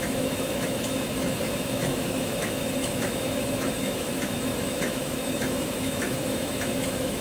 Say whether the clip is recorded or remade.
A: remade